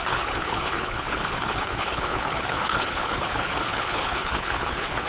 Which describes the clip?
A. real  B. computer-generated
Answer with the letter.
B